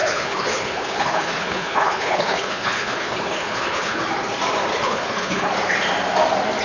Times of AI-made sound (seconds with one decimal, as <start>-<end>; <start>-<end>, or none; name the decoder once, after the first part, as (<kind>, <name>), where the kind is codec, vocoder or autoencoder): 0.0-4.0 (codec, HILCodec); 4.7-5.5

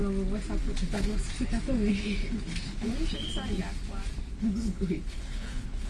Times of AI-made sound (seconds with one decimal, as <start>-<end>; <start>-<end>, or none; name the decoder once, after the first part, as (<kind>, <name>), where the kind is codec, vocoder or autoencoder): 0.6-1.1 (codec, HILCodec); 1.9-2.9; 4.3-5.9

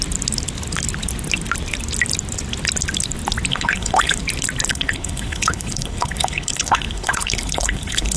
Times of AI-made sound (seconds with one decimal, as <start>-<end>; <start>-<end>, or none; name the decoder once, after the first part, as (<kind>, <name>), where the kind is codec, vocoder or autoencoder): 3.5-4.2 (codec, HILCodec); 4.7-8.2

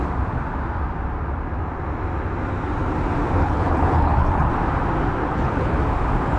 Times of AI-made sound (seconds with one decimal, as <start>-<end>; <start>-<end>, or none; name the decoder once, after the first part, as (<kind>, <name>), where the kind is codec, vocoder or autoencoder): 3.4-4.5 (codec, HILCodec); 5.2-5.8

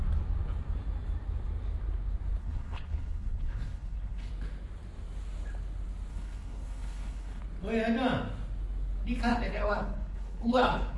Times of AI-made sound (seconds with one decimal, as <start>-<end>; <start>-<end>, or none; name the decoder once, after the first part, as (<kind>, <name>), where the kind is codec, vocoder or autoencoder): 2.4-4.3 (codec, HILCodec); 6.1-7.4; 9.3-11.0